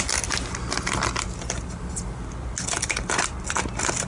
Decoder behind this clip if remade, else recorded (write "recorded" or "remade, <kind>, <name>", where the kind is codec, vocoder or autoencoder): recorded